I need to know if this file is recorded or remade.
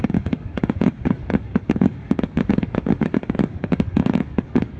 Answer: remade